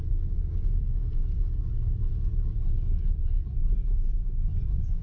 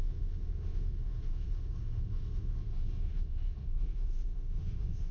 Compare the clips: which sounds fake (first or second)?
second